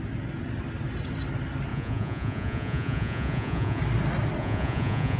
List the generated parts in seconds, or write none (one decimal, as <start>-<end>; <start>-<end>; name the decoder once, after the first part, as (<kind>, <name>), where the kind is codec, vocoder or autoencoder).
1.7-3.8 (vocoder, Vocos); 4.4-5.2